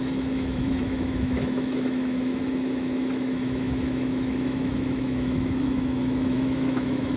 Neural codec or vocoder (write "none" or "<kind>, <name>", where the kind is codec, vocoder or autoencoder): autoencoder, DAC-VAE